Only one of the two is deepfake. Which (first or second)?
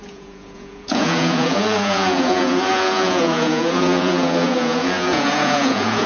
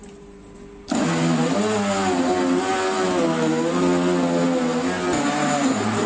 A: first